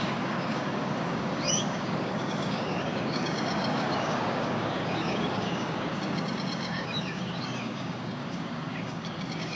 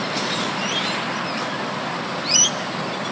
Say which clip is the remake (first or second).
first